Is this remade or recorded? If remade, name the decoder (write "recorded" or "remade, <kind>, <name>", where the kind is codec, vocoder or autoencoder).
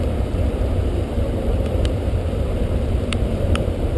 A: remade, vocoder, BigVGAN v2